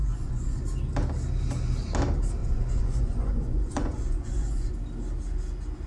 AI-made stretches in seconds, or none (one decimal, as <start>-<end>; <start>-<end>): 0.0-0.6; 2.4-4.7